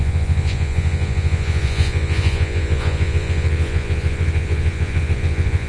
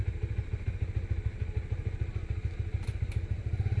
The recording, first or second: second